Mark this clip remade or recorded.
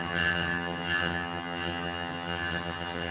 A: remade